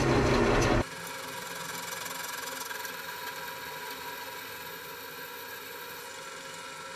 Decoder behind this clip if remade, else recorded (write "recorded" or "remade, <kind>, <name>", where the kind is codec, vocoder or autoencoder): recorded